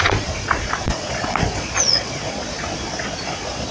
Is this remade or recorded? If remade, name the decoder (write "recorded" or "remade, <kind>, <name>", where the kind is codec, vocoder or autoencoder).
remade, vocoder, Vocos